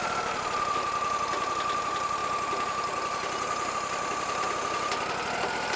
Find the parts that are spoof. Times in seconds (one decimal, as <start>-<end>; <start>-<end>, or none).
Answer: none